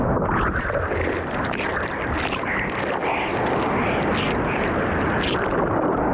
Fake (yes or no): no